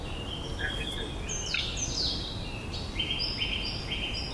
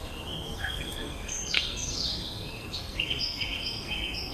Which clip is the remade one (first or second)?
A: second